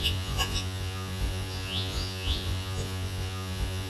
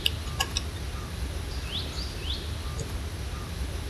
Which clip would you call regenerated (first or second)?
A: first